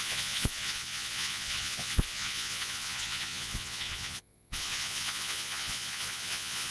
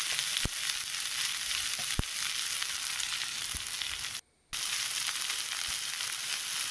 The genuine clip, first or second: second